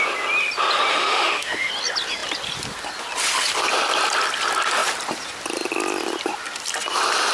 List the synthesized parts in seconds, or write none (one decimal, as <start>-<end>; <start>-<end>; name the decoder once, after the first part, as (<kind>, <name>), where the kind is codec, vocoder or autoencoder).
0.9-1.7 (autoencoder, DAC-VAE)